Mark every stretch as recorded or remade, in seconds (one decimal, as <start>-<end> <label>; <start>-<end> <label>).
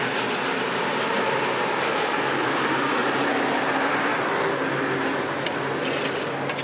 0.0-6.6 recorded